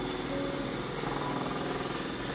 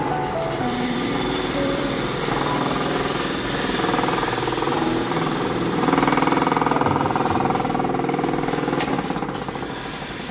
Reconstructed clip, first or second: second